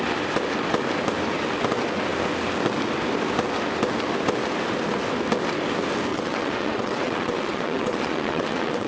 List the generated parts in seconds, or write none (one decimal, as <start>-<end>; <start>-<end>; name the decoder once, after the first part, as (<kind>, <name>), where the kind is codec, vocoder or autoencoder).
6.1-8.9 (vocoder, WaveNeXt)